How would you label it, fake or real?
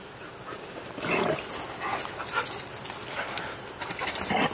real